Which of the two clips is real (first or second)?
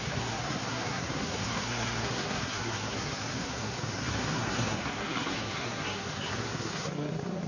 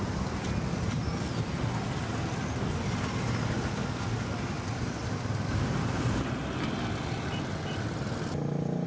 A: second